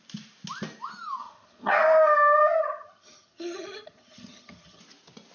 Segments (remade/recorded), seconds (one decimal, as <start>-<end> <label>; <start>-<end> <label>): 0.0-1.2 recorded; 1.2-1.7 remade; 1.7-2.6 recorded; 2.6-4.8 remade; 4.8-5.3 recorded